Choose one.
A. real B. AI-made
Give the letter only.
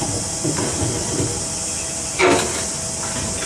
A